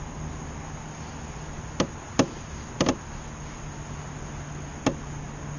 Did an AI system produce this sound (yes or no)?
no